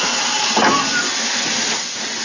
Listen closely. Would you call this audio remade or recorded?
recorded